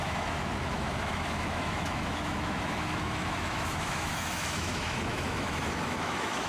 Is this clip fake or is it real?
fake